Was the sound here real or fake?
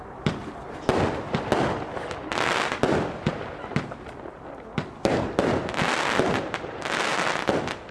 real